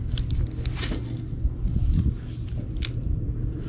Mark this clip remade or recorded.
recorded